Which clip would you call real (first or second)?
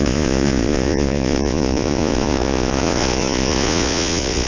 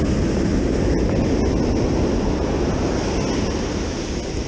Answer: second